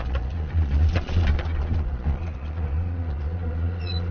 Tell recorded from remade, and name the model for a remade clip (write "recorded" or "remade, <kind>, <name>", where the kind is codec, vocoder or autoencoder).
remade, vocoder, Vocos